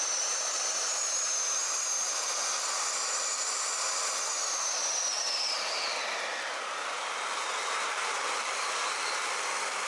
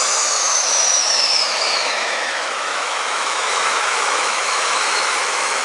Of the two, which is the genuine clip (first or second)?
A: first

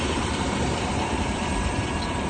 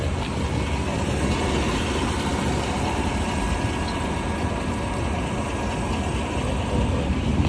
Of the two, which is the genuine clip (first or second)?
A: second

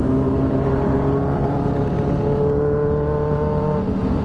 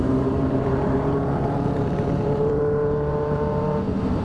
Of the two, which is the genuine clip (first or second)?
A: first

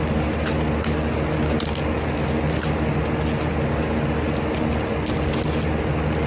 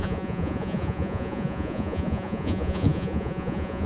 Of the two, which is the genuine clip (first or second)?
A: first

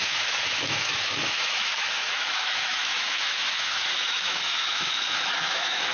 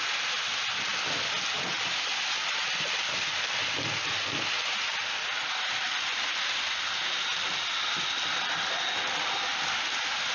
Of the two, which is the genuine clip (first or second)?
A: second